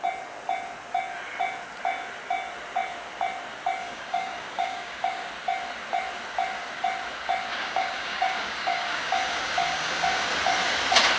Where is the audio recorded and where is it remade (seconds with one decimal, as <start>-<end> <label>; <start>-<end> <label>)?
0.0-3.8 recorded; 3.8-5.3 remade; 5.3-7.5 recorded; 7.5-10.3 remade; 10.3-11.2 recorded